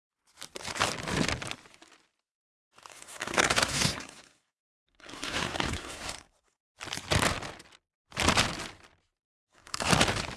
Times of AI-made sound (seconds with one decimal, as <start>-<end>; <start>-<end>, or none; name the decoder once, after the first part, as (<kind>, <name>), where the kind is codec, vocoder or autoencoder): 2.9-6.6 (codec, SNAC); 9.3-9.9